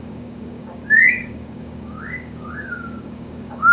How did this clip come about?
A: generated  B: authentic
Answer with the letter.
A